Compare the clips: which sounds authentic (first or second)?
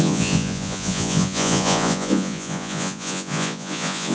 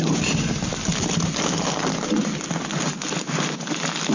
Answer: second